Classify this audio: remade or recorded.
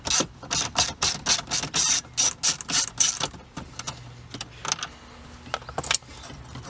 recorded